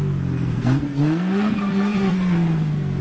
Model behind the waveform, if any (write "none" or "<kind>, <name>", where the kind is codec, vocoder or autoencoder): codec, SNAC